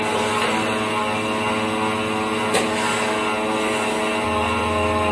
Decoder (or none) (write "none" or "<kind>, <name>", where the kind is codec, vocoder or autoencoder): none